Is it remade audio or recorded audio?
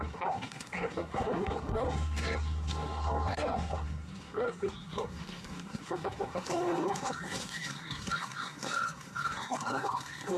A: remade